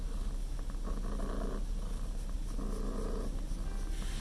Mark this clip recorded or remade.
recorded